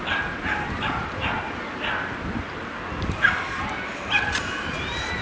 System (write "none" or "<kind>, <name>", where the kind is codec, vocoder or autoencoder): none